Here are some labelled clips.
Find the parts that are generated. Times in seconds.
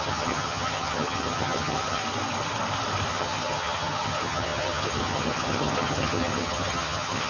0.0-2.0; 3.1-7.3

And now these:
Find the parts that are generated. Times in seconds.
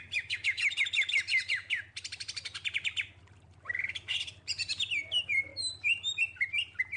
0.0-1.6; 4.1-5.5; 6.2-7.0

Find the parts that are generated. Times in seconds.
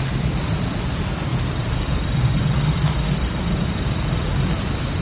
none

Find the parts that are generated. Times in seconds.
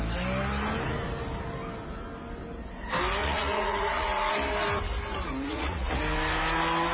3.2-4.3; 5.5-6.0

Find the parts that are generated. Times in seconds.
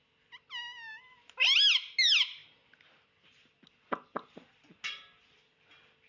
none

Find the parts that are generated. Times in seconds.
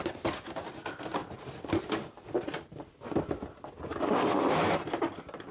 1.2-3.2; 3.9-5.1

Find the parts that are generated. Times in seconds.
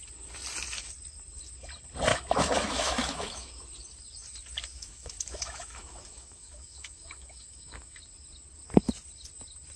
2.1-3.5; 4.7-8.0